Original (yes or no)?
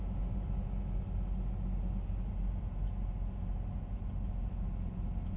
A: yes